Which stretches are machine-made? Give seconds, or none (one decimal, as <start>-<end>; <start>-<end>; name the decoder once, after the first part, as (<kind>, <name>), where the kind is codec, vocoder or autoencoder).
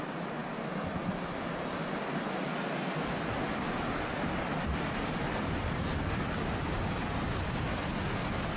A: none